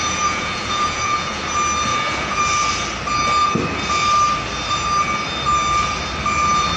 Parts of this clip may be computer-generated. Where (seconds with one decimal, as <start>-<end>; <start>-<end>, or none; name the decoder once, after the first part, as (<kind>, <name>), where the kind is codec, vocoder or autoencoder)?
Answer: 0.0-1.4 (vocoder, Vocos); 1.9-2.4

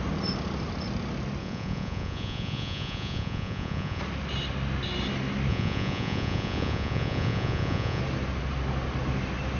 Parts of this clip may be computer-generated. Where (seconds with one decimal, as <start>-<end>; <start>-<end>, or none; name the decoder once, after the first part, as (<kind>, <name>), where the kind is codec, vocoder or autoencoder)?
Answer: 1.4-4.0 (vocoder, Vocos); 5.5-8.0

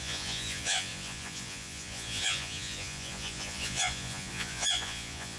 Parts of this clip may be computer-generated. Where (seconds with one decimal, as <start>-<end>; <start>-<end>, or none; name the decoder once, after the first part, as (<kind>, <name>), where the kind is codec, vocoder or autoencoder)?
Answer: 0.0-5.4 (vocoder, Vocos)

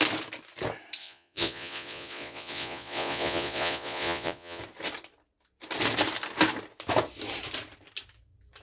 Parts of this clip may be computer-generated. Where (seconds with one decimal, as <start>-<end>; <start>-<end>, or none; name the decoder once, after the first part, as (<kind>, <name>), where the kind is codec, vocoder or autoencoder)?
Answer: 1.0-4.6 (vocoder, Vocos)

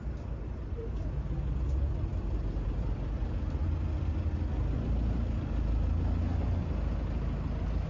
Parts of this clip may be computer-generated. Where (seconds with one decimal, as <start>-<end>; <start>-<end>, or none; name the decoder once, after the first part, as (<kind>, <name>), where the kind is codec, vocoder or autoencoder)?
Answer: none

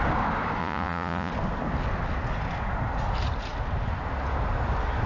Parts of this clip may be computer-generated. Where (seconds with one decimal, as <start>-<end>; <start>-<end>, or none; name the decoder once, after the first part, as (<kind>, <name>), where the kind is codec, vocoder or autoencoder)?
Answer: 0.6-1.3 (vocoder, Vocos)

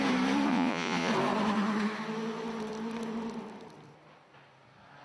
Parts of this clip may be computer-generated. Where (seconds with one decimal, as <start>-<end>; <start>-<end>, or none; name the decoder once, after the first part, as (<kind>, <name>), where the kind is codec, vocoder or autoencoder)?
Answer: 0.5-1.1 (vocoder, Vocos)

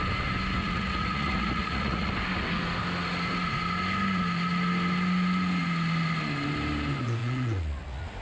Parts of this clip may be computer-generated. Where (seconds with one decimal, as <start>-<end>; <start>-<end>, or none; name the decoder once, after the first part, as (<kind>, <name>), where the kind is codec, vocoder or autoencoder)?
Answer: 0.6-2.1 (vocoder, Vocos); 7.2-8.2